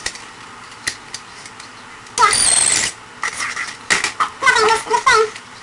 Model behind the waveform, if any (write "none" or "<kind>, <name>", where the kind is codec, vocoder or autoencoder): none